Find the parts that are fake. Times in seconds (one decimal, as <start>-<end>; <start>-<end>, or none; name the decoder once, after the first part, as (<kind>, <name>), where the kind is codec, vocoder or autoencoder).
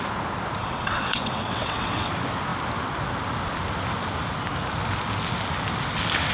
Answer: 0.6-2.1 (vocoder, WaveNeXt)